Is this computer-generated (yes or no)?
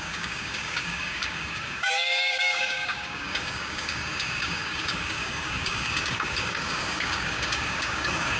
yes